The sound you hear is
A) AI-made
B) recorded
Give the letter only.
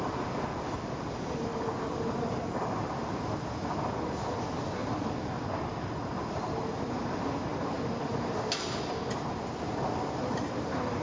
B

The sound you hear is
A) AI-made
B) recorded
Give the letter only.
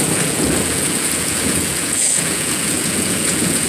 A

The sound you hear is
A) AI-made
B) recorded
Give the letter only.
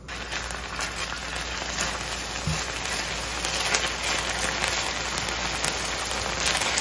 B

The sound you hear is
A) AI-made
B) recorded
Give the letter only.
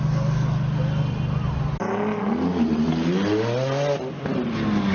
B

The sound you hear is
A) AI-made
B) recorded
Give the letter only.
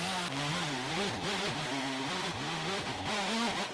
B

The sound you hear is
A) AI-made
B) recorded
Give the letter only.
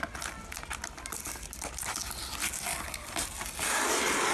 B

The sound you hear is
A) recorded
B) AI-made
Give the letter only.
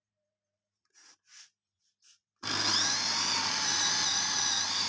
B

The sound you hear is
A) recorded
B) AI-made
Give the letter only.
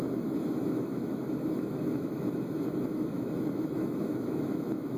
B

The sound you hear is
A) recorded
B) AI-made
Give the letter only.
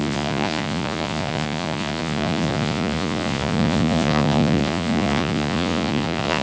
B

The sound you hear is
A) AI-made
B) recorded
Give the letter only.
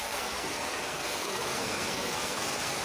A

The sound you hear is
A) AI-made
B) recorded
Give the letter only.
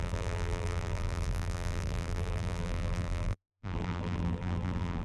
A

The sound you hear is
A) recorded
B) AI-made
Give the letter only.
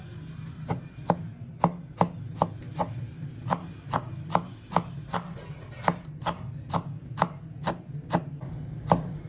A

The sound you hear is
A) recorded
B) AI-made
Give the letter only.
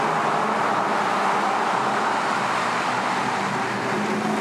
A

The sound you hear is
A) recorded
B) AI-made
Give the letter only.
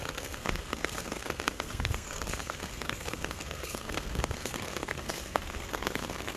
B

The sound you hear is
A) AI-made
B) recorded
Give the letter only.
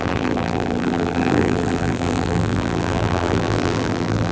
A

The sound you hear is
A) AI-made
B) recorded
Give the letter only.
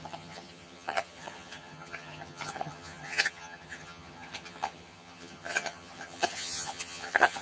A